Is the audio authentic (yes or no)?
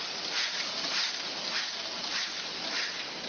yes